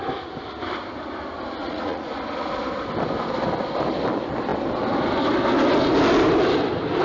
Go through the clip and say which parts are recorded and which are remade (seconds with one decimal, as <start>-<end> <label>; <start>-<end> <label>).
0.0-1.6 recorded; 1.6-2.1 remade; 2.1-7.0 recorded